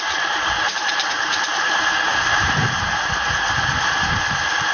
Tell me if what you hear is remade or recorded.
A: remade